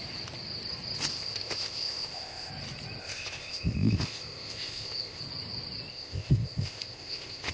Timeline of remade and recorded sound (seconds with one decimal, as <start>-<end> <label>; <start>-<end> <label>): 0.0-1.1 recorded; 1.1-2.5 remade; 2.5-3.0 recorded; 3.0-5.2 remade; 5.2-5.9 recorded; 5.9-7.5 remade